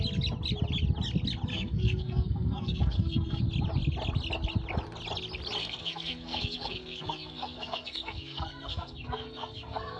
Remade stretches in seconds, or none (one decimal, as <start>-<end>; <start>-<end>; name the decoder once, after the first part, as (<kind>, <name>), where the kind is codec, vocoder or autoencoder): 1.5-3.4 (codec, SNAC); 5.6-10.0